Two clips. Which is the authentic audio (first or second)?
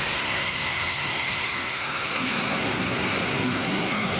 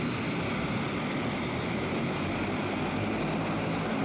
second